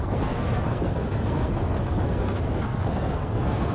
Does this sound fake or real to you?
fake